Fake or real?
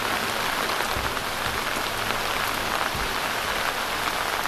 real